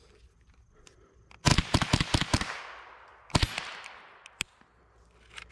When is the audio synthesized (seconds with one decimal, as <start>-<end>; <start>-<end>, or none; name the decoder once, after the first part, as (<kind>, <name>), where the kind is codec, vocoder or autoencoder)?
none